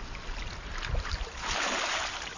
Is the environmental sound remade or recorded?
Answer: recorded